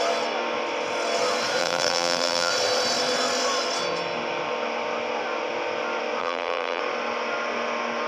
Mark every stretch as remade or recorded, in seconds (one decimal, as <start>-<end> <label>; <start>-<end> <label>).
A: 0.0-1.6 recorded; 1.6-2.5 remade; 2.5-6.2 recorded; 6.2-6.8 remade; 6.8-8.1 recorded